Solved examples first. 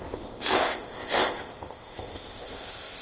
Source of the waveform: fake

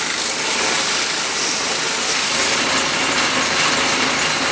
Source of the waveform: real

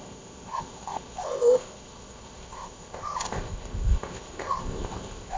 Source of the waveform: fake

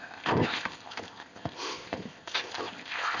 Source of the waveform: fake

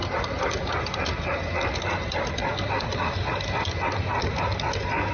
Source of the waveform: real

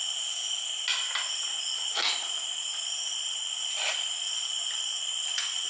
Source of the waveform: real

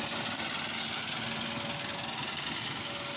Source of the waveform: real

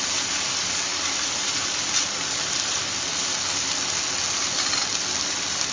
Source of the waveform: real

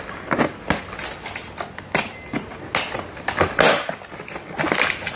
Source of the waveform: real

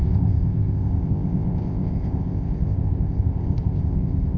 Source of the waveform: fake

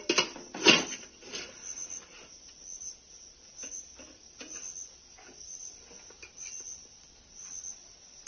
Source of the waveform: real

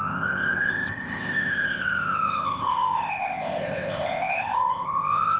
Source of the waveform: fake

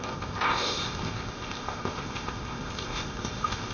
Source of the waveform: fake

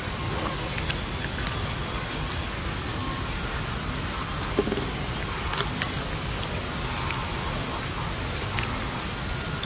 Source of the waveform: real